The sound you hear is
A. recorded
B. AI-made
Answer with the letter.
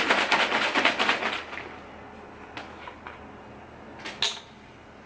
A